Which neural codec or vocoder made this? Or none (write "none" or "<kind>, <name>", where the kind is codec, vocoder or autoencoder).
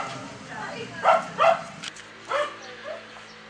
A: none